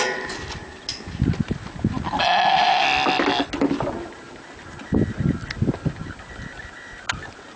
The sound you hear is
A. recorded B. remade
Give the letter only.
A